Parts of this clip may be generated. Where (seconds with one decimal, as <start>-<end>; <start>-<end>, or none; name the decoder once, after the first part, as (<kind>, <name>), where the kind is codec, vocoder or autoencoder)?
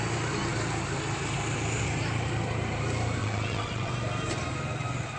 3.2-3.9 (vocoder, WaveNeXt)